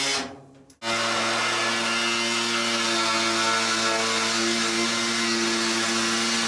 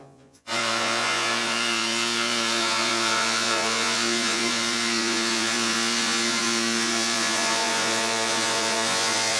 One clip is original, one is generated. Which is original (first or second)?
first